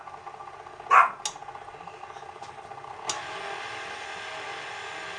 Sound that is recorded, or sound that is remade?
recorded